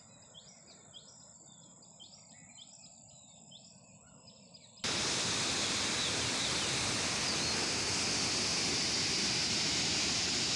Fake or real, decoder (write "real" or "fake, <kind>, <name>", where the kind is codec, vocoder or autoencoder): real